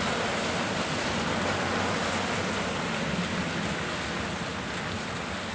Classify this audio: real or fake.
real